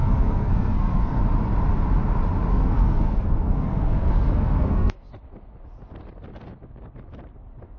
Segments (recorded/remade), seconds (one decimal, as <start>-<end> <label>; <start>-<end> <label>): 0.0-1.2 remade; 1.2-2.5 recorded; 2.5-5.1 remade; 5.1-7.8 recorded